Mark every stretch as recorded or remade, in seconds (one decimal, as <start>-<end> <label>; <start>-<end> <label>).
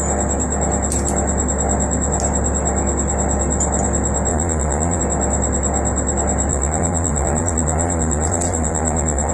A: 0.0-4.3 recorded; 4.3-5.0 remade; 5.0-6.5 recorded; 6.5-9.3 remade